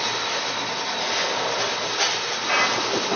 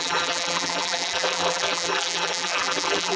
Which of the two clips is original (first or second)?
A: first